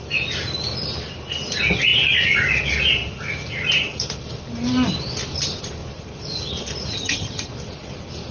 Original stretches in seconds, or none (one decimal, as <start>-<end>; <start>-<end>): 0.0-6.9; 7.5-8.3